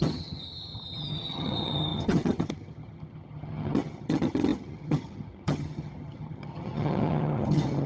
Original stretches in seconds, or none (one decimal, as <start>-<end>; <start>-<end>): none